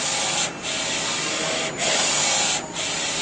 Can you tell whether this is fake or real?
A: real